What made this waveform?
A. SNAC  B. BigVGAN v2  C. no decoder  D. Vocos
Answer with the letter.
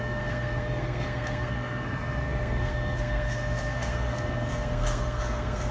A